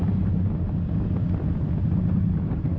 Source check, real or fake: real